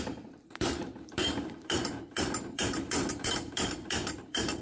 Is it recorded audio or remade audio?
remade